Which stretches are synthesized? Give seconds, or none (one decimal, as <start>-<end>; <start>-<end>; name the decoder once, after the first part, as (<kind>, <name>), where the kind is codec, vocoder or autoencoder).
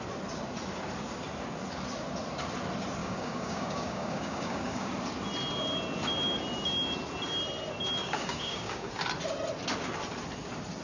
3.0-4.9 (codec, DAC); 8.0-8.9